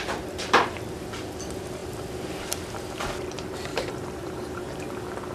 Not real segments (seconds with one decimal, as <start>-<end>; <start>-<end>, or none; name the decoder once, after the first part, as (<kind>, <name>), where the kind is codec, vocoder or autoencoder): 3.7-4.8 (vocoder, BigVGAN v2)